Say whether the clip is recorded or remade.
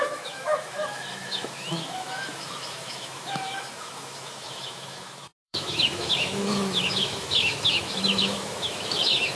remade